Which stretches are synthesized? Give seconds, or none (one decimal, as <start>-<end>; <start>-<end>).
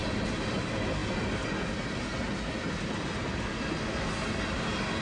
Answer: none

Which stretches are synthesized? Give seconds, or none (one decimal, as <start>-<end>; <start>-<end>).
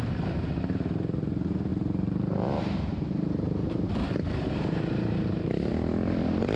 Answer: 1.7-5.7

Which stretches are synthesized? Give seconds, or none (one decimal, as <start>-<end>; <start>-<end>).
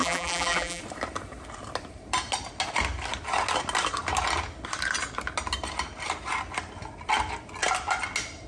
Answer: 0.0-0.8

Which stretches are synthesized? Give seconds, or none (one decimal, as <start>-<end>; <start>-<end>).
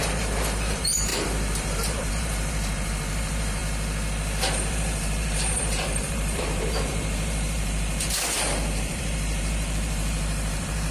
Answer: 0.0-3.6; 4.7-10.9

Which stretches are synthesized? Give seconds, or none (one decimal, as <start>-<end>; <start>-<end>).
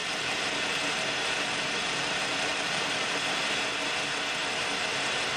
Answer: 0.0-3.1; 4.4-5.4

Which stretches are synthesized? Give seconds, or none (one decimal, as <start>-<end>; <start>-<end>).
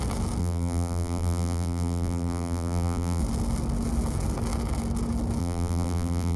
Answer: 0.4-3.2; 5.4-6.4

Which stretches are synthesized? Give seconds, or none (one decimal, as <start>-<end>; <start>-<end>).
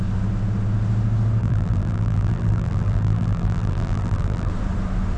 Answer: 1.4-4.5